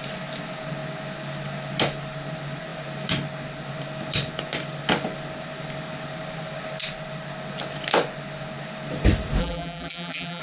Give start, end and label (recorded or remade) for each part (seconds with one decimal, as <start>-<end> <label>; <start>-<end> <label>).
0.0-9.4 recorded; 9.4-10.4 remade